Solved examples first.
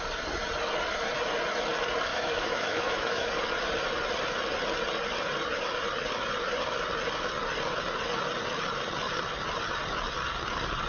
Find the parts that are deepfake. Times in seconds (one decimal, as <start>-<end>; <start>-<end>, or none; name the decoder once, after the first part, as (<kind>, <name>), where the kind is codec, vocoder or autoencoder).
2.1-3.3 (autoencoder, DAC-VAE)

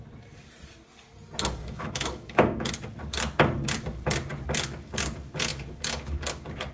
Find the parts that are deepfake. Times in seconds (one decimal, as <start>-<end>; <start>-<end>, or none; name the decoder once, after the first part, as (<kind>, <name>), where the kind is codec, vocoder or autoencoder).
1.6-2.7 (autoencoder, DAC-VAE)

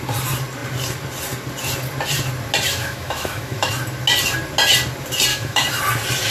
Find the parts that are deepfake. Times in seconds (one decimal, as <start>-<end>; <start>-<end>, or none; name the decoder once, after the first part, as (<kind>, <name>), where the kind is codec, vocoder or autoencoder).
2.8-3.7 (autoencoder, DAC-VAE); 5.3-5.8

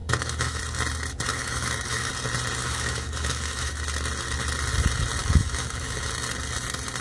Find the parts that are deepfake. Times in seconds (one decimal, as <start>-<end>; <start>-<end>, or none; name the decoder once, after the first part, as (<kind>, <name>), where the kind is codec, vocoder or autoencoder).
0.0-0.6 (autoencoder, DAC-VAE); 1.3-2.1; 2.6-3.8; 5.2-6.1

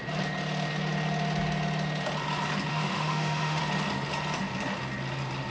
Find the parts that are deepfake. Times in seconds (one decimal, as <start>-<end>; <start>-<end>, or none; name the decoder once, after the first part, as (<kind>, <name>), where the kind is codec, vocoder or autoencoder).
2.7-3.6 (autoencoder, DAC-VAE)

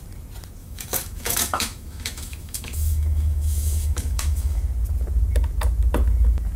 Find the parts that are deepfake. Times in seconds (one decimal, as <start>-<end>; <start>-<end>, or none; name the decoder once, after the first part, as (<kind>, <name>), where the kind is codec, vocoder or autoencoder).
0.6-4.6 (autoencoder, DAC-VAE)

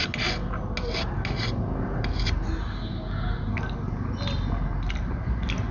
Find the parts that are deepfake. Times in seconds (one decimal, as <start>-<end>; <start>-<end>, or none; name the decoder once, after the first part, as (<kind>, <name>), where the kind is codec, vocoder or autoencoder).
none